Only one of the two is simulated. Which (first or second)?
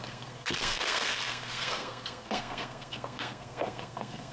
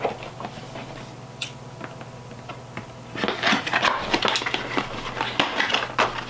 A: first